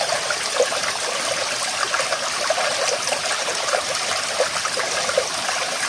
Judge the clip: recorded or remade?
recorded